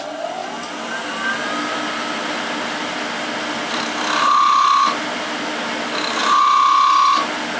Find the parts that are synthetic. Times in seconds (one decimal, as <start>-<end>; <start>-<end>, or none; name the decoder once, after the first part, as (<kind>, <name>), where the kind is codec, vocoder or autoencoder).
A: 0.4-1.1 (vocoder, BigVGAN v2)